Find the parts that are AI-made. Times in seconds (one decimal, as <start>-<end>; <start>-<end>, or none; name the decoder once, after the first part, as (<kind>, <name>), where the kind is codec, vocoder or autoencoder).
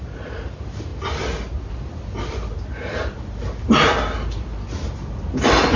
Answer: none